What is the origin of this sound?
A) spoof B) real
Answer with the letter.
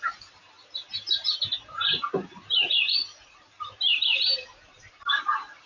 A